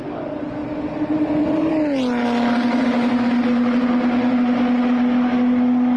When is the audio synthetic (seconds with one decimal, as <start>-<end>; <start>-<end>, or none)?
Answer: none